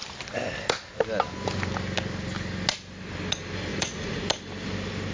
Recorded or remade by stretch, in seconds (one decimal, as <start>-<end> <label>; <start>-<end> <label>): 0.0-3.7 recorded; 3.7-4.2 remade; 4.2-5.1 recorded